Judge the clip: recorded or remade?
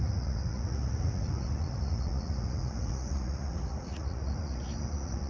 remade